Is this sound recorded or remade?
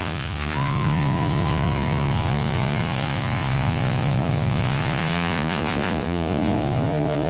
remade